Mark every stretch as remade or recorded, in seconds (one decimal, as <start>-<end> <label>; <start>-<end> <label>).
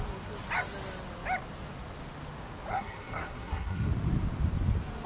0.0-2.7 recorded; 2.7-3.9 remade; 3.9-5.1 recorded